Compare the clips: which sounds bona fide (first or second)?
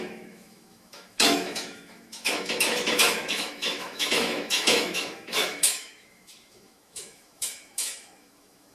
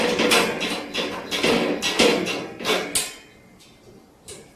second